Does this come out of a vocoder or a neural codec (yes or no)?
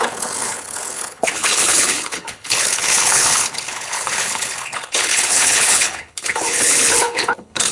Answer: yes